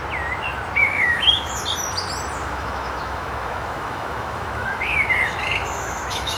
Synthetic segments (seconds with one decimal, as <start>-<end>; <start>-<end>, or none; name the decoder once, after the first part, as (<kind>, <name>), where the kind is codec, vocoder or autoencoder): 0.8-1.6 (autoencoder, DAC-VAE); 2.4-6.4